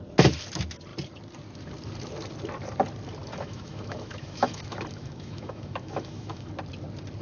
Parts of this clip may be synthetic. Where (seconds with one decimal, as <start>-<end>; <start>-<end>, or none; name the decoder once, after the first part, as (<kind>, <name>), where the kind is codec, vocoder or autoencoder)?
3.3-6.5 (autoencoder, DAC-VAE)